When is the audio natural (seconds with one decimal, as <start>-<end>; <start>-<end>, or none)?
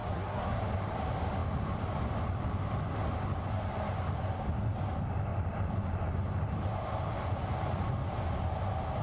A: 0.6-9.0